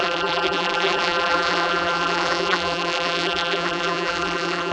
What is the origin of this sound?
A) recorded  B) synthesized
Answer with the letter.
B